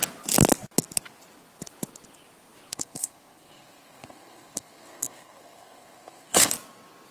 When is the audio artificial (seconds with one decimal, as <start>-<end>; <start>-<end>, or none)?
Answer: 2.7-6.5